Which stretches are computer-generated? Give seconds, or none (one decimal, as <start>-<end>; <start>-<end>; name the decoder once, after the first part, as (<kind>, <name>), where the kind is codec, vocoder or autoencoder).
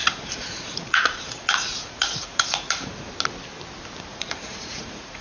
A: 0.0-3.1 (vocoder, Vocos); 4.1-5.2